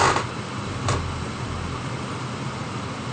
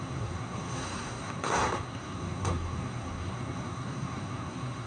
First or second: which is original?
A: first